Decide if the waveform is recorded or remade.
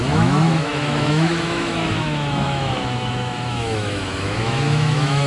remade